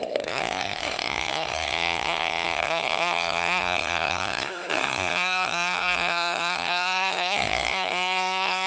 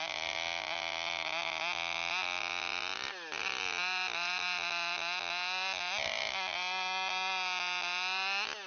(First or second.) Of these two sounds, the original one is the second